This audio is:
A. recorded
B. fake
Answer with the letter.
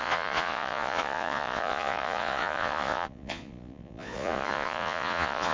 B